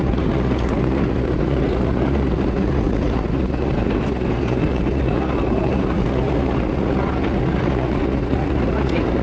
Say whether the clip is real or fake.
fake